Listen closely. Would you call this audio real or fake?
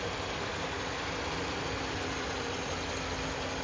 real